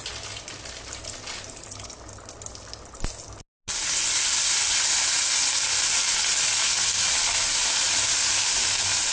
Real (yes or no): yes